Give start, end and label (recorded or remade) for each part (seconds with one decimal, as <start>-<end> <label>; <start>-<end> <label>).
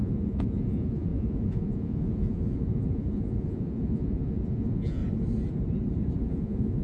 0.0-5.0 remade; 5.0-6.2 recorded; 6.2-6.8 remade